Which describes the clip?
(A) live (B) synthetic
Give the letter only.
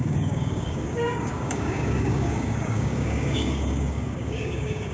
B